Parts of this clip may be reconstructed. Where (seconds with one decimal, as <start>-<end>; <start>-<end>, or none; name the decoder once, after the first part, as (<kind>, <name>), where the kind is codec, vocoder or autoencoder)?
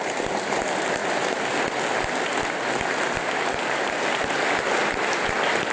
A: none